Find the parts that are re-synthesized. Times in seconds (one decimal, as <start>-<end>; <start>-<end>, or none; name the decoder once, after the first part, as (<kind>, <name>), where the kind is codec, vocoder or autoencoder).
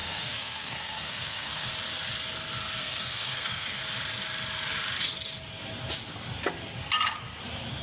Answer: 0.0-1.7 (codec, SNAC); 2.8-3.8